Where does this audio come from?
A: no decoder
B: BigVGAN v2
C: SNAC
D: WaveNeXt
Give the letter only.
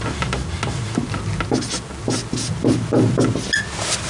A